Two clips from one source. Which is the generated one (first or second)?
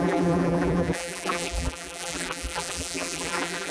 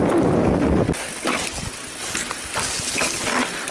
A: first